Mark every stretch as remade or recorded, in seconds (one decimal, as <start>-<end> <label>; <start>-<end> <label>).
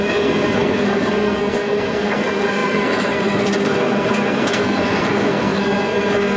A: 0.0-6.4 remade